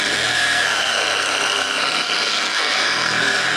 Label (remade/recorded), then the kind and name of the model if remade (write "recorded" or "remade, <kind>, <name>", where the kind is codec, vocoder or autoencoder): remade, codec, SNAC